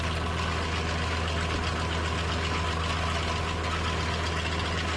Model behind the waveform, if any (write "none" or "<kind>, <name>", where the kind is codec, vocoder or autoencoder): none